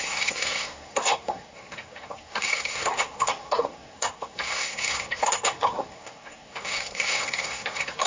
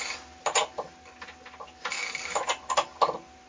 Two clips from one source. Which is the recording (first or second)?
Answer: second